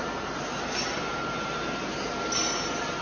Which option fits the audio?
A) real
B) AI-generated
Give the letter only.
A